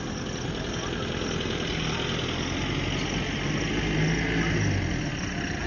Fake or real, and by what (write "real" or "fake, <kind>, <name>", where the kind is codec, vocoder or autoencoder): real